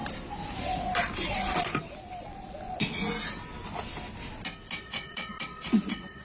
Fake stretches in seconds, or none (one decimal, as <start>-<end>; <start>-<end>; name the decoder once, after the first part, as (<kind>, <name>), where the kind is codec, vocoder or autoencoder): 2.3-3.0 (vocoder, Vocos); 4.8-6.2